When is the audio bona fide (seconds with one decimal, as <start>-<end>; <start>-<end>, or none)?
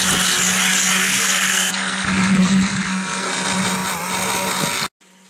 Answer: 0.0-1.0; 3.3-5.3